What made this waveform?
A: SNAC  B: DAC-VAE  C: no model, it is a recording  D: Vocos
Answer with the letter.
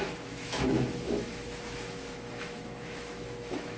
B